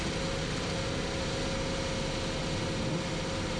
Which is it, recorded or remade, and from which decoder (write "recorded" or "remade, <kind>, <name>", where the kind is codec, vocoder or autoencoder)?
recorded